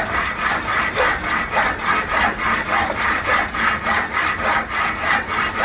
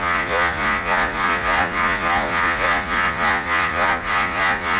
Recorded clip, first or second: first